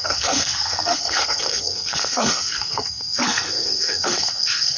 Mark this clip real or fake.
fake